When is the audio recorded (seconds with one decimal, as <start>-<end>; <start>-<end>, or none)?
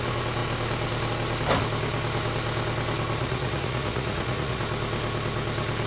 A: 0.0-3.2; 4.6-5.9